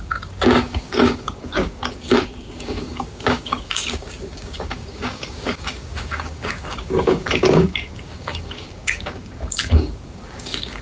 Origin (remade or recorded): remade